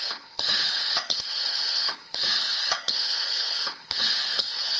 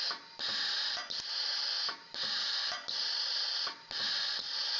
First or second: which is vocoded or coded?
first